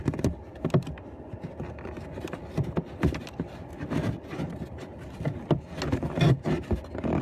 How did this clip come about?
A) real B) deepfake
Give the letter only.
A